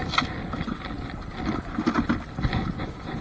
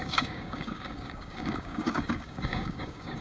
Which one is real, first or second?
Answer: first